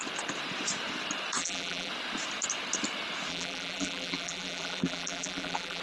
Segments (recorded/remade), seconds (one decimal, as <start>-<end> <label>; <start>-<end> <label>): 0.0-1.4 recorded; 1.4-1.9 remade; 1.9-3.3 recorded; 3.3-5.8 remade